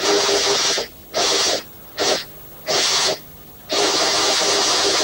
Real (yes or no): yes